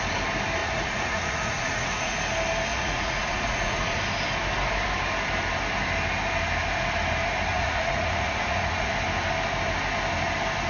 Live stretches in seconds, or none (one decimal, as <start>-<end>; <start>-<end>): 0.0-0.6; 2.2-2.7; 4.0-7.5; 8.9-10.7